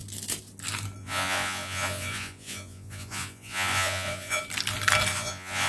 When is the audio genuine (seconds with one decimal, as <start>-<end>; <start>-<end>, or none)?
0.0-1.0; 4.4-5.1